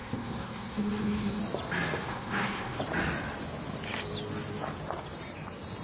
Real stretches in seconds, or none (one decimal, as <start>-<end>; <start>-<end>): 1.4-2.1; 2.8-5.8